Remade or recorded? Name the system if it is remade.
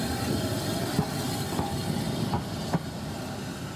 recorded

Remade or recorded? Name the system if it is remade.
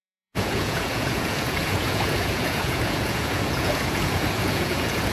remade, vocoder, Vocos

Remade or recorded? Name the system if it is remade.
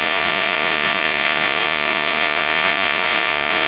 remade, vocoder, Vocos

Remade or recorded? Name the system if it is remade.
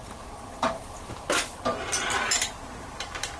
recorded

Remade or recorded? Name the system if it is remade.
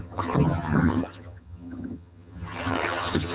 remade, vocoder, HiFi-GAN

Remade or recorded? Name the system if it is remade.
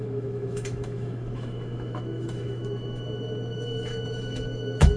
remade, autoencoder, DAC-VAE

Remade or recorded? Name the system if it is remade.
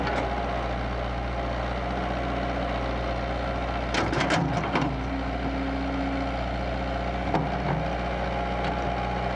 recorded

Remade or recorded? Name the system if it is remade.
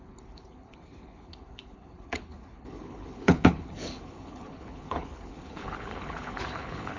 remade, codec, HILCodec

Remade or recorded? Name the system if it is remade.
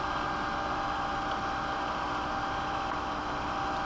recorded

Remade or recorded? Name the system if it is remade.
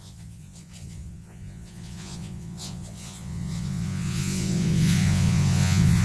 remade, vocoder, Vocos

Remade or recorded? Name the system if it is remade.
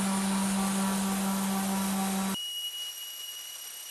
recorded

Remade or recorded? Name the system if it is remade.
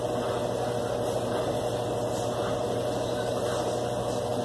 recorded